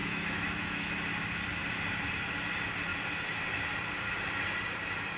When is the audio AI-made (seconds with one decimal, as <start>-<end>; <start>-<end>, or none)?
0.0-0.9